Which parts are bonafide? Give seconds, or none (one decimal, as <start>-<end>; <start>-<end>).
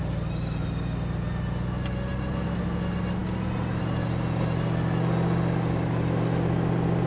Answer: 0.0-7.1